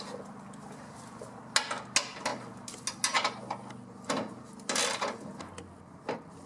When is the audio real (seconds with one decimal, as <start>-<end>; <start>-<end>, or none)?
0.0-6.5